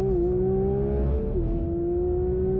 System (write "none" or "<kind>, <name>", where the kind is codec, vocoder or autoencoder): none